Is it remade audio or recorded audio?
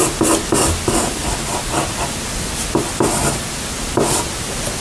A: recorded